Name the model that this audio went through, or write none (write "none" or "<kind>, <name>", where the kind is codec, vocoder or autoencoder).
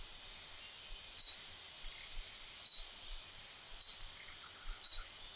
none